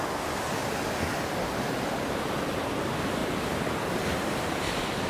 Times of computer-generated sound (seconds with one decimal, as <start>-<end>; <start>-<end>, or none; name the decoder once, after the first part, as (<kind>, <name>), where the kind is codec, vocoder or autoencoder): 3.2-5.1 (vocoder, BigVGAN v2)